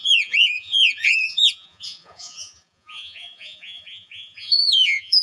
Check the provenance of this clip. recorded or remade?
remade